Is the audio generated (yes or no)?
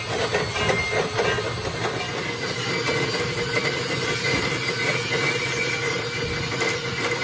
no